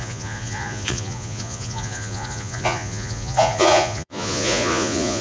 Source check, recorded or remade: remade